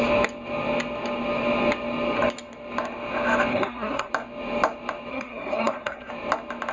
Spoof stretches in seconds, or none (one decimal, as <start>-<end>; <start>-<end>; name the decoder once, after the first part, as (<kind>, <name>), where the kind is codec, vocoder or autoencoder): 3.5-4.1 (codec, SNAC); 5.1-6.1

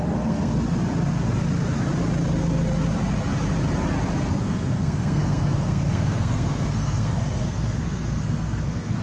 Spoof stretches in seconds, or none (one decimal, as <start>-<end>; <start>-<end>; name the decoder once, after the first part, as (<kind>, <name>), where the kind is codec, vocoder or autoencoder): 0.0-0.5 (codec, SNAC); 4.3-9.0

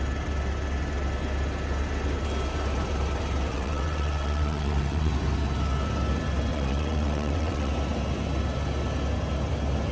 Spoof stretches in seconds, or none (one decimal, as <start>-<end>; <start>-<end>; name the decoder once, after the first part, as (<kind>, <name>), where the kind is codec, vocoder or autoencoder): 3.5-5.1 (vocoder, WaveNeXt); 6.5-7.7

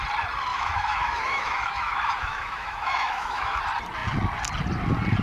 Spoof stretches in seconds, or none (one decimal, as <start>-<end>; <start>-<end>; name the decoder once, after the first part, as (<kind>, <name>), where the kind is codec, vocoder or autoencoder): 0.5-3.6 (autoencoder, DAC-VAE)

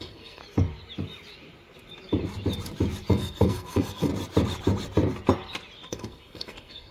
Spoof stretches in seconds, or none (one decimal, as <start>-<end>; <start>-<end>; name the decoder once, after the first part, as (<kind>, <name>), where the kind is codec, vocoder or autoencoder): 0.0-0.4 (codec, SNAC); 3.1-4.1; 5.9-6.9

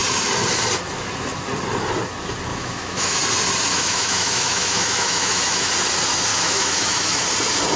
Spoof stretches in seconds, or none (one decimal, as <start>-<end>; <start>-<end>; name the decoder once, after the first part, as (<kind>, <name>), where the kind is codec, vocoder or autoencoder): 2.5-3.2 (autoencoder, DAC-VAE); 3.7-5.7; 6.3-7.2

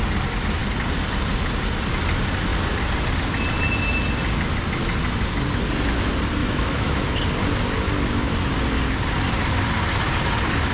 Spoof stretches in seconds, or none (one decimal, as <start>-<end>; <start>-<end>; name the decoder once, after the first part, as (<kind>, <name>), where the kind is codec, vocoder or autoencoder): 6.4-7.2 (autoencoder, DAC-VAE)

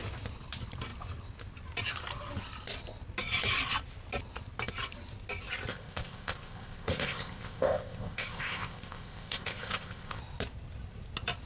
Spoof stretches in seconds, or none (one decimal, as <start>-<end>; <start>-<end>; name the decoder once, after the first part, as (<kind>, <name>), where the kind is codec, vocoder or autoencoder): 5.7-10.2 (codec, ZipCodec)